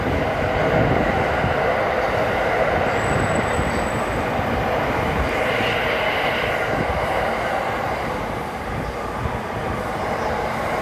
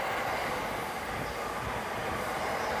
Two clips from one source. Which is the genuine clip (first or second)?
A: second